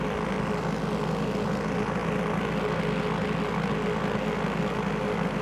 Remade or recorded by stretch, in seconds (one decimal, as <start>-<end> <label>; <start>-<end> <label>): 0.0-5.4 recorded